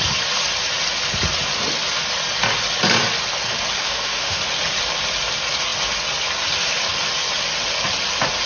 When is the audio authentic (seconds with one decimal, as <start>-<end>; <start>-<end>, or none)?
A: 0.0-3.8; 4.4-8.5